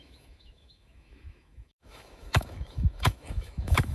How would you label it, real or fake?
fake